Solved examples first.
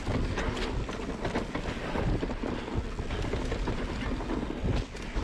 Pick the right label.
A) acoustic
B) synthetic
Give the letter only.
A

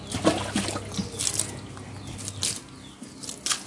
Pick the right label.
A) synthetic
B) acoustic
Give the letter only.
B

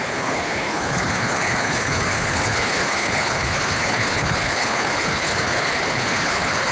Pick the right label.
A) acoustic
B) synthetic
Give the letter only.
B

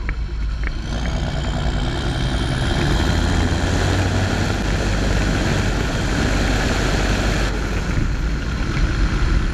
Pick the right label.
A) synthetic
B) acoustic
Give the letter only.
B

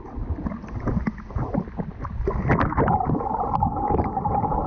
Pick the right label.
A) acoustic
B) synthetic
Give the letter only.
A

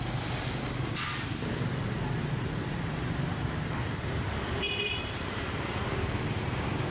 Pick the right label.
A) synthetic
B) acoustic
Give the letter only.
A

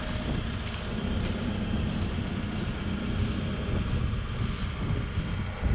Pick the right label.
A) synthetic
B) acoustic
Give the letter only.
B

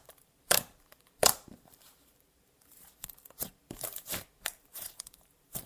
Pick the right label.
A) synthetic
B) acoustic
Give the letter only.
A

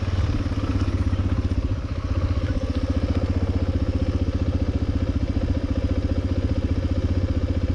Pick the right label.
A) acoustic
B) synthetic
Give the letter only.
A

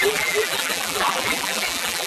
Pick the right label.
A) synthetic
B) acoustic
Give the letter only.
A